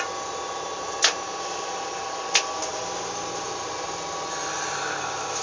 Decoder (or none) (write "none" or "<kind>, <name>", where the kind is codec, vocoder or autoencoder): none